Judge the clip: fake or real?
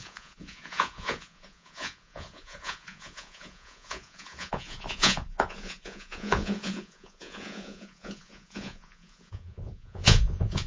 fake